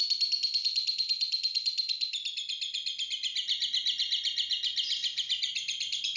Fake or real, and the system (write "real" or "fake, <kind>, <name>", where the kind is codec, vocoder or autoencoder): real